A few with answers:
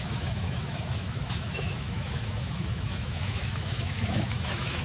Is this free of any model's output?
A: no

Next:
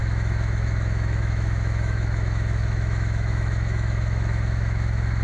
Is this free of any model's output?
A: no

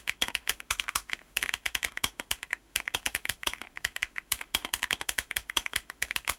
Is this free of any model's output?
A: no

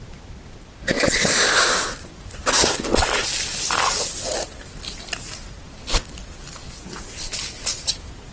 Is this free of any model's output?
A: yes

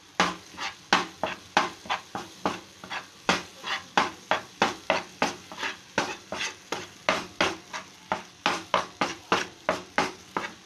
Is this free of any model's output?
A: yes